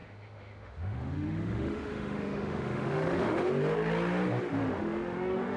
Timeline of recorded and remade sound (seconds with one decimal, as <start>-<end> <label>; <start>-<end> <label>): 0.0-3.4 remade; 3.4-4.6 recorded; 4.6-5.6 remade